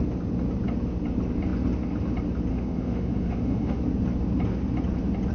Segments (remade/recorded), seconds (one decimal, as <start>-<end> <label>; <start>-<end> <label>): 0.0-2.5 recorded; 2.5-3.8 remade; 3.8-5.3 recorded